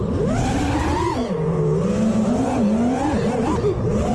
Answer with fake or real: real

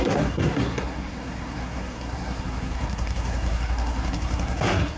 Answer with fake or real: fake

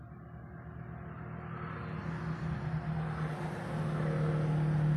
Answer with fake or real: real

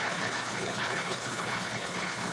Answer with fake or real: fake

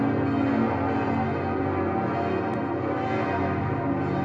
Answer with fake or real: real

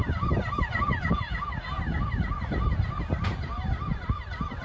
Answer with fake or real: real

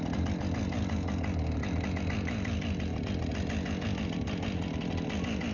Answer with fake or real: real